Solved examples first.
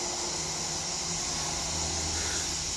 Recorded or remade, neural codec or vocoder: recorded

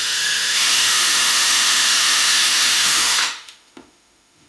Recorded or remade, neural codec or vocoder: remade, autoencoder, DAC-VAE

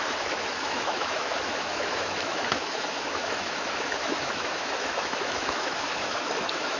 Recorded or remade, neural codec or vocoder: remade, autoencoder, DAC-VAE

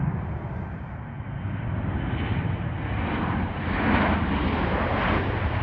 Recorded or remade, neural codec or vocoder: recorded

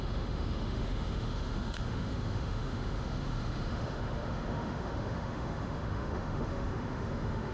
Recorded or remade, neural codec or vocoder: remade, autoencoder, DAC-VAE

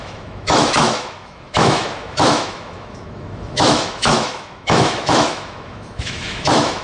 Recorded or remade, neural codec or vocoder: remade, autoencoder, DAC-VAE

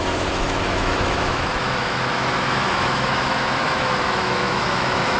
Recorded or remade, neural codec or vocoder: remade, autoencoder, DAC-VAE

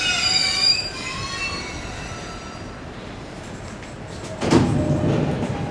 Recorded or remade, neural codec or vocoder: recorded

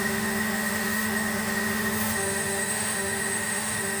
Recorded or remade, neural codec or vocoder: remade, autoencoder, DAC-VAE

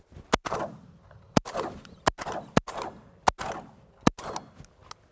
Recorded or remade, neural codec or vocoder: recorded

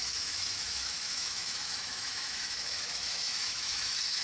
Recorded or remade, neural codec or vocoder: remade, autoencoder, DAC-VAE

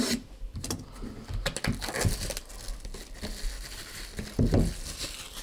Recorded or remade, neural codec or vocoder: recorded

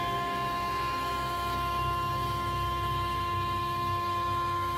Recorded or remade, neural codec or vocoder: remade, autoencoder, DAC-VAE